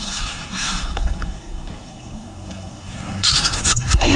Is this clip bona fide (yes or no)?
no